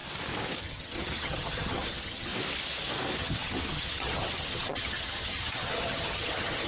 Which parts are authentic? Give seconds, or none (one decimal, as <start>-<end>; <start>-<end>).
0.0-0.6; 2.3-3.2